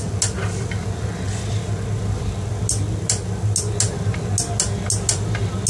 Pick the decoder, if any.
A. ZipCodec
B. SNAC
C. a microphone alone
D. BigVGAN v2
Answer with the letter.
C